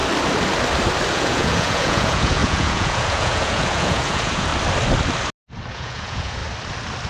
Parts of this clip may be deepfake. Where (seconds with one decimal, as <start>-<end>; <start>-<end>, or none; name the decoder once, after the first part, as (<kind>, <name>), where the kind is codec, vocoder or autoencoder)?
1.1-4.5 (vocoder, Vocos); 5.7-6.4